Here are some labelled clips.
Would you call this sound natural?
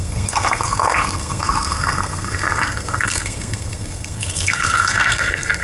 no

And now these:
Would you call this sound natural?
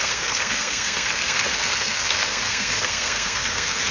no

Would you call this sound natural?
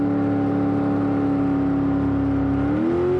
yes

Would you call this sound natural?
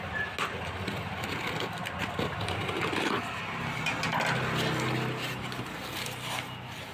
yes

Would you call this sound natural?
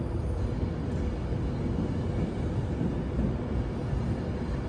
yes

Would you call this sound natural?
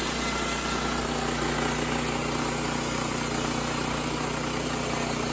yes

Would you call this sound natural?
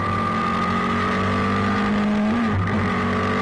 yes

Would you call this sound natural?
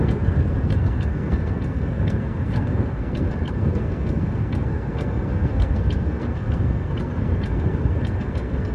no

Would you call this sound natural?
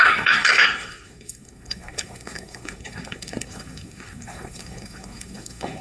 no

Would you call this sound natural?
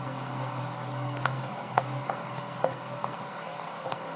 no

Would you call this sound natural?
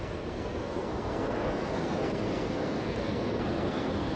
no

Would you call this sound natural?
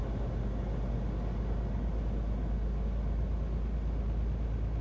yes